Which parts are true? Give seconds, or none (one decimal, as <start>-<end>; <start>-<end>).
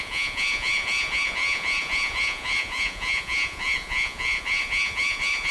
none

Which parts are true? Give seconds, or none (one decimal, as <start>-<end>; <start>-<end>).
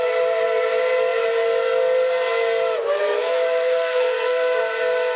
0.0-3.0; 4.6-5.2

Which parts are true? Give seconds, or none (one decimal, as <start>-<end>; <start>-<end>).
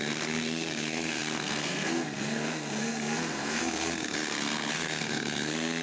none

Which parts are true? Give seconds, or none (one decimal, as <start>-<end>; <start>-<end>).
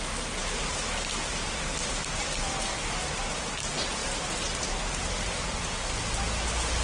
0.0-4.0; 5.6-6.8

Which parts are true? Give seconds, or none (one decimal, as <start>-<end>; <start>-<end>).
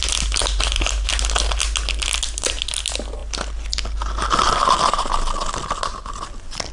0.0-0.4; 1.1-6.7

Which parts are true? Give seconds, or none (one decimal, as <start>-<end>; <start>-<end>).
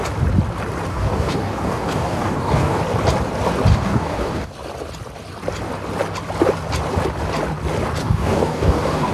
0.0-0.9; 2.8-3.7; 4.5-8.0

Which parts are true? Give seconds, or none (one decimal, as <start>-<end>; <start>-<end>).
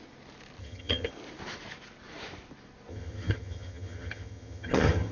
0.0-0.6; 1.1-2.9